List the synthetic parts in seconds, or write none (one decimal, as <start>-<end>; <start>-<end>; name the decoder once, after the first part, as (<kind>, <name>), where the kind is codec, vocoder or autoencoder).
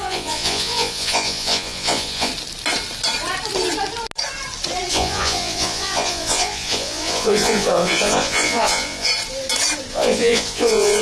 0.0-2.3 (vocoder, Vocos); 4.9-9.1; 9.9-11.0